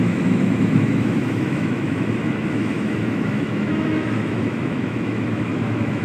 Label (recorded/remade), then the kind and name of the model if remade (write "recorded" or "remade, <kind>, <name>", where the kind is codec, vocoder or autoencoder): remade, autoencoder, DAC-VAE